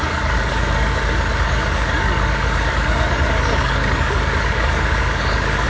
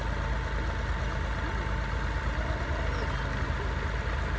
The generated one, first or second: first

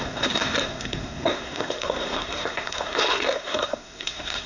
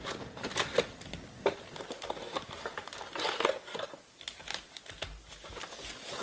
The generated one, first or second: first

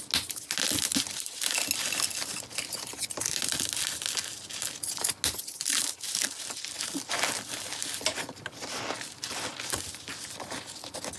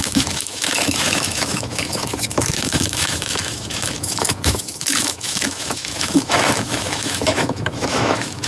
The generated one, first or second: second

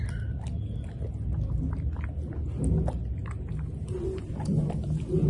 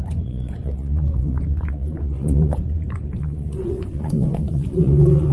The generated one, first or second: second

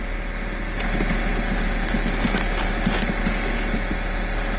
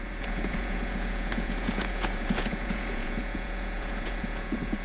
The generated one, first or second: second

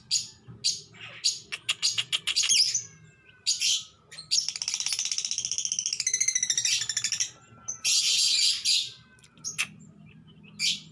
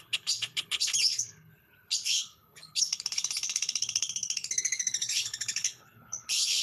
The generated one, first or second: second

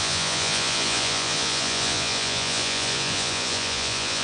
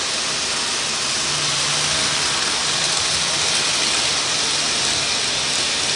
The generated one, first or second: first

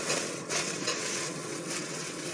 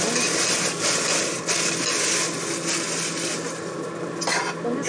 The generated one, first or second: first